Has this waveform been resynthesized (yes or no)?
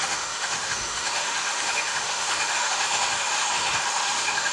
yes